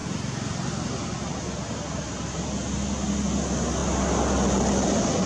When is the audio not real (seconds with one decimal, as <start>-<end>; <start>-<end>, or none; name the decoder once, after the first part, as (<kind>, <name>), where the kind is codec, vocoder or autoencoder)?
none